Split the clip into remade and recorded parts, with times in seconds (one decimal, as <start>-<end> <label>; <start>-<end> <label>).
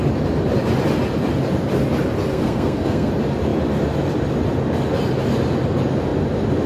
0.0-2.3 recorded; 2.3-3.1 remade; 3.1-6.7 recorded